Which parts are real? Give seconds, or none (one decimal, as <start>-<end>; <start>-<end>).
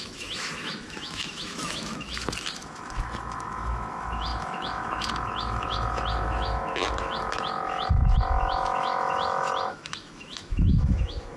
none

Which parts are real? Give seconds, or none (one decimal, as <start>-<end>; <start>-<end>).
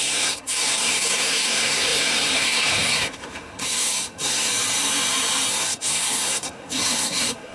4.5-5.5